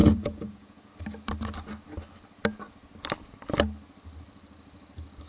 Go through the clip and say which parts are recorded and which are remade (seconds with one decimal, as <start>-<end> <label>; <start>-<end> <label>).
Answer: 0.0-0.9 remade; 0.9-5.3 recorded